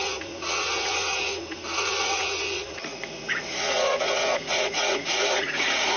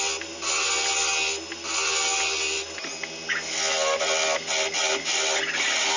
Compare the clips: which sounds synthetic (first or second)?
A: first